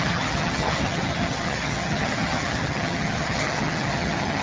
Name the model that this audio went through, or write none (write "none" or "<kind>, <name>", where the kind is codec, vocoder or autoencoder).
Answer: vocoder, HiFi-GAN